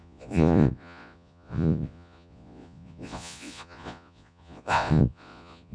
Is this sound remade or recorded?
remade